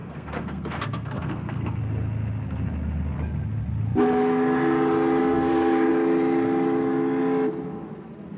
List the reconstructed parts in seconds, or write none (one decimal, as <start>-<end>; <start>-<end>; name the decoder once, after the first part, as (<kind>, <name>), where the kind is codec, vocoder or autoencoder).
0.0-1.8 (codec, SNAC); 5.2-5.9